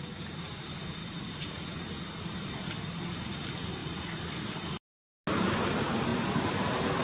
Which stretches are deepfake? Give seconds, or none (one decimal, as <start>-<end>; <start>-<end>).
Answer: none